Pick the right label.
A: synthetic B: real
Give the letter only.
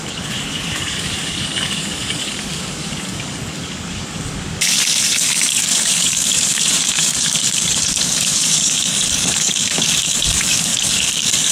A